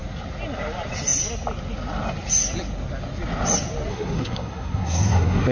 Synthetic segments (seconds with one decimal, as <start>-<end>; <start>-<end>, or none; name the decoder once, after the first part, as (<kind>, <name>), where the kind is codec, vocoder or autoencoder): 3.9-5.5 (codec, SNAC)